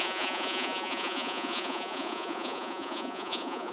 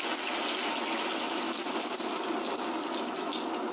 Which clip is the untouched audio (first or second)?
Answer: second